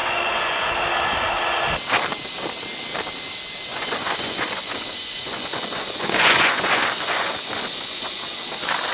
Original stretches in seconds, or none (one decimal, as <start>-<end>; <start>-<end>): 0.7-3.7; 8.5-8.9